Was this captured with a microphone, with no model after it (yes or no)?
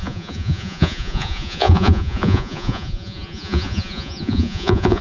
no